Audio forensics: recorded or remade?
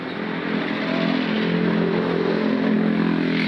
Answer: recorded